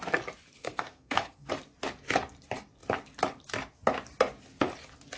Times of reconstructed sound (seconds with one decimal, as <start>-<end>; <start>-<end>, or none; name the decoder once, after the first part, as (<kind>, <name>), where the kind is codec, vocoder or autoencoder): 0.6-1.5 (codec, SNAC)